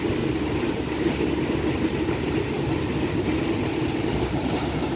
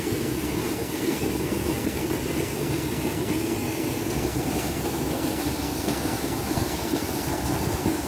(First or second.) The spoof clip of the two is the second